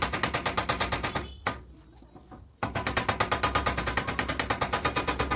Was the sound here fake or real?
real